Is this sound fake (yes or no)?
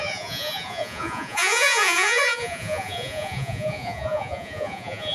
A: yes